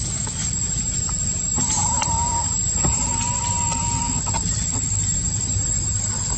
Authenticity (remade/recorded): recorded